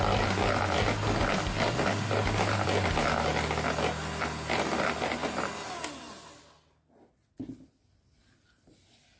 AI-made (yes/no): no